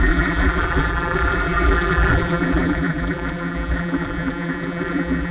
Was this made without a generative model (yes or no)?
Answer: no